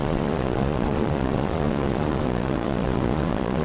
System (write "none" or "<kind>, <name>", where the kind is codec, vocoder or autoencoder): vocoder, Vocos